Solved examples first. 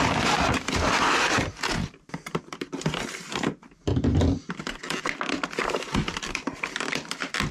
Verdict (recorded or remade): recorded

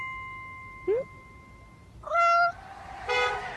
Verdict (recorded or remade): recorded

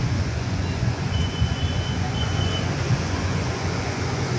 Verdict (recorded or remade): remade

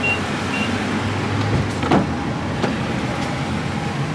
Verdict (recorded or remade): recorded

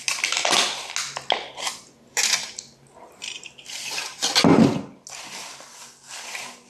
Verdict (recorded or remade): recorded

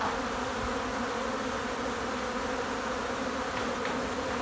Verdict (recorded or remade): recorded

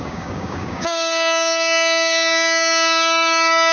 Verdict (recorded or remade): remade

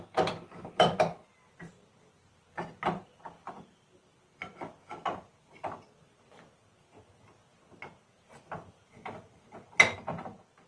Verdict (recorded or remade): recorded